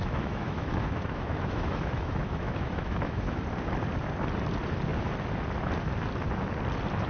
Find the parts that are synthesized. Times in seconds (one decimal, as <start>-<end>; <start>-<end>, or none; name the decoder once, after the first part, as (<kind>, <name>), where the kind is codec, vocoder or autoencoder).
0.0-3.4 (autoencoder, DAC-VAE)